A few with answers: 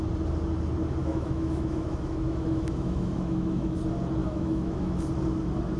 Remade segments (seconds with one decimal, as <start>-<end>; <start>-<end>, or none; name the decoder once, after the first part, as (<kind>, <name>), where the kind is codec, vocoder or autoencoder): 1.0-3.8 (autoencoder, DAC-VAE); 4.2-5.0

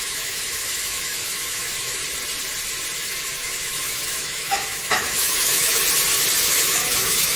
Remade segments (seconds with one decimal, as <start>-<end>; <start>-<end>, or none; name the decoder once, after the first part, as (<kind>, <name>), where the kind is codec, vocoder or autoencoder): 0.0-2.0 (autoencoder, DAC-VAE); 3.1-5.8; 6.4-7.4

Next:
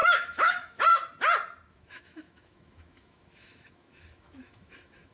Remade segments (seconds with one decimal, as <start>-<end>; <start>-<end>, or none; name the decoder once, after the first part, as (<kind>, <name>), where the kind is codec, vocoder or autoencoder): 0.0-0.9 (autoencoder, DAC-VAE); 1.7-5.1